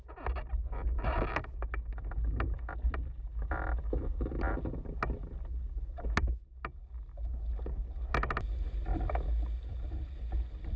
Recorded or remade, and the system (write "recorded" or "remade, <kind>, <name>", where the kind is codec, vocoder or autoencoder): recorded